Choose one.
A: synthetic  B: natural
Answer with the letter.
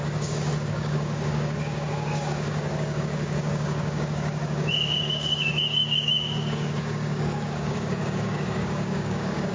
A